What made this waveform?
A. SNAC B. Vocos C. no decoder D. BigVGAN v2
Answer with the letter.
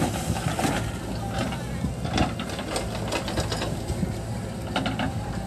C